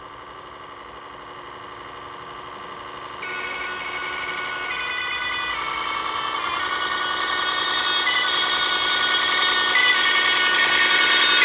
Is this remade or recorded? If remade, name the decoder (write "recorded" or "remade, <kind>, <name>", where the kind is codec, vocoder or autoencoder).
recorded